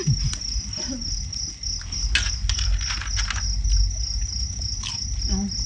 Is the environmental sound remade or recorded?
recorded